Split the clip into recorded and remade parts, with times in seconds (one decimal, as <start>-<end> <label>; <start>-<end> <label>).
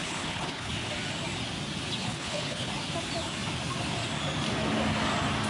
0.0-0.7 remade; 0.7-2.0 recorded; 2.0-2.7 remade; 2.7-5.5 recorded